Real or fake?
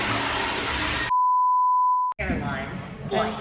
real